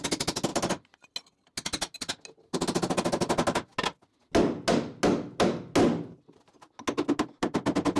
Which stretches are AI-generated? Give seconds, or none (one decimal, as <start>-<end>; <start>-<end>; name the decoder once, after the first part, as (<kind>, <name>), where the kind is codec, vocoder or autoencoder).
none